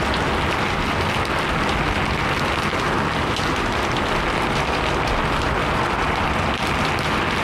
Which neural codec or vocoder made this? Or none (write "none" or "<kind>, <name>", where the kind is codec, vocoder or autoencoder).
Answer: none